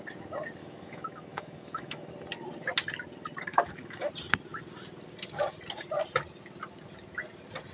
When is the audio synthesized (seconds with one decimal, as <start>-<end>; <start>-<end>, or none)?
0.6-2.1; 3.5-4.1